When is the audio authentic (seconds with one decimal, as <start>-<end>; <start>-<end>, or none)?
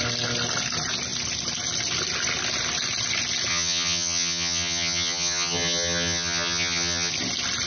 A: 0.0-3.5; 7.1-7.7